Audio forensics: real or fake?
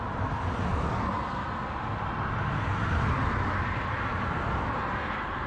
real